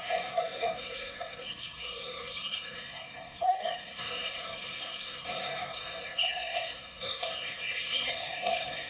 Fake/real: fake